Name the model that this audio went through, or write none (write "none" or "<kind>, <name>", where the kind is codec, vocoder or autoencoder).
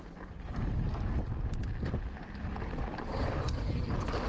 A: none